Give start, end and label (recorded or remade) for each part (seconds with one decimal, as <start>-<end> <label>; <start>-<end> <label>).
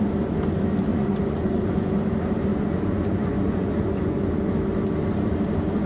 0.0-0.9 recorded; 0.9-1.9 remade; 1.9-2.5 recorded; 2.5-4.4 remade; 4.4-5.9 recorded